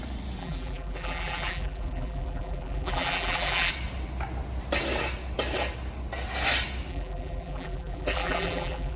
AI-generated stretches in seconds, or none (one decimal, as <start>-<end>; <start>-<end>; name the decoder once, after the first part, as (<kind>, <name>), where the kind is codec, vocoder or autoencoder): 0.4-3.7 (vocoder, BigVGAN v2); 6.9-9.0